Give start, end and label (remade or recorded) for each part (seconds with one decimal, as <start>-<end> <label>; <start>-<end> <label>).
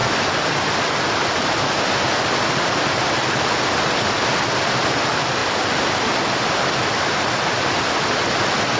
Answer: 0.0-8.8 recorded